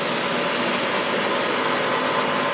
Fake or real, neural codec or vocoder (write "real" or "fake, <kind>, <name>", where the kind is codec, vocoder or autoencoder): real